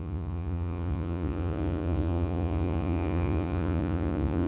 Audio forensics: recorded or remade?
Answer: remade